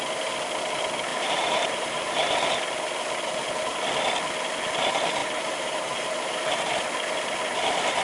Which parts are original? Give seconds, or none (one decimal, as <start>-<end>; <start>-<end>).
0.0-1.1; 2.1-5.2; 6.7-8.0